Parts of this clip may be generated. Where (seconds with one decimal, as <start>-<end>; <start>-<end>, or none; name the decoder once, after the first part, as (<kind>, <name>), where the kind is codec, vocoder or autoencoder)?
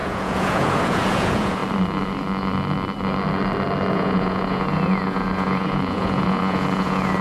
0.0-1.6 (vocoder, Vocos); 3.9-7.2